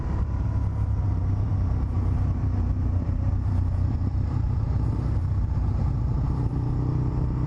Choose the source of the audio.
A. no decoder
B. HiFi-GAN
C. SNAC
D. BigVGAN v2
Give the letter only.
D